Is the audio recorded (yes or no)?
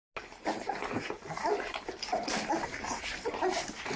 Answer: yes